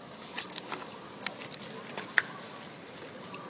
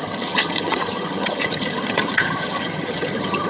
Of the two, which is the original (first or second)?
first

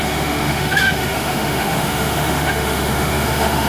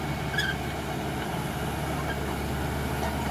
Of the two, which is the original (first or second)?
second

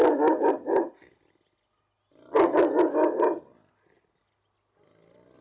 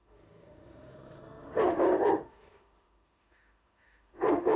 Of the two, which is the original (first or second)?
first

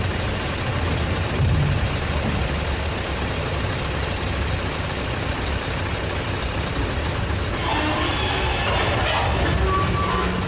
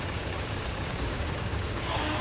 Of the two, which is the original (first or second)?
first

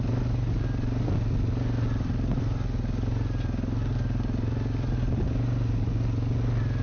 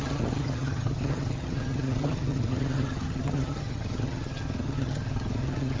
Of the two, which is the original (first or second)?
first